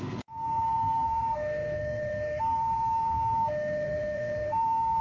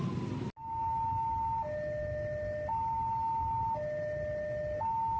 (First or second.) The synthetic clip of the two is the first